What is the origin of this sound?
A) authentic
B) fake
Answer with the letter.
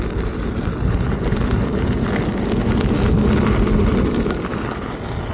A